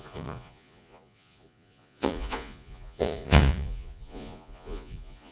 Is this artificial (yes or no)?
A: yes